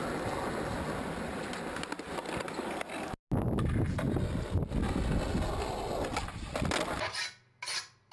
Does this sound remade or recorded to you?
recorded